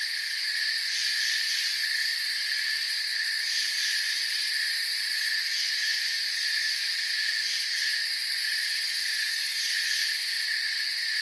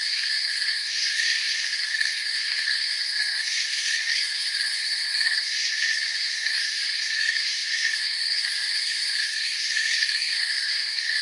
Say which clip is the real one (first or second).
first